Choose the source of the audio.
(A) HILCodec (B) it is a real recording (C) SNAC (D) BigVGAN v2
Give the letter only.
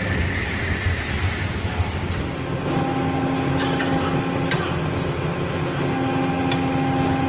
B